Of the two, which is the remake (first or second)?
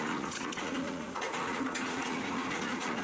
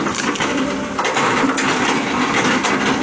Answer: first